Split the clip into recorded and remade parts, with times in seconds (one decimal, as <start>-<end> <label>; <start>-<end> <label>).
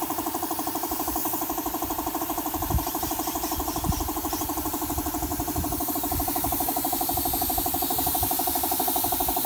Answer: 0.0-1.2 remade; 1.2-2.2 recorded; 2.2-9.5 remade